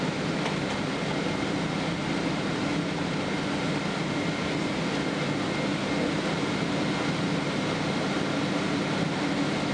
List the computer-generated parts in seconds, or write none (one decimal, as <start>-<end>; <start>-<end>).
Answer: none